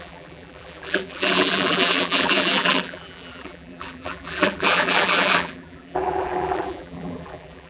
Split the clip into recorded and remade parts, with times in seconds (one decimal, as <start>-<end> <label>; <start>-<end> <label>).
0.0-7.7 remade